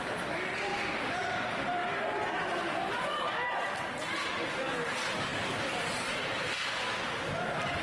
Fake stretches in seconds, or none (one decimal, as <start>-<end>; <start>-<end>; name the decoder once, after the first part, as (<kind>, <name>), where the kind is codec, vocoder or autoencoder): none